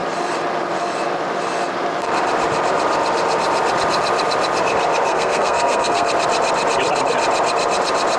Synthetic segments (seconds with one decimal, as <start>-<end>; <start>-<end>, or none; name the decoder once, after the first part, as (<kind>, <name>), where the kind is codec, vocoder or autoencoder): 5.1-6.1 (codec, SNAC)